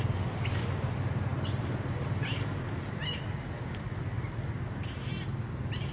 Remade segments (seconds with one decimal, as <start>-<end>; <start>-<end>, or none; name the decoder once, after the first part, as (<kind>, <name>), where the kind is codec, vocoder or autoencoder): none